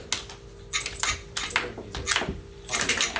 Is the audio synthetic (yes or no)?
no